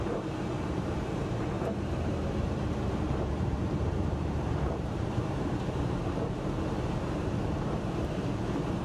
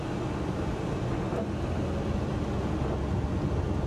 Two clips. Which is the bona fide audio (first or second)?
second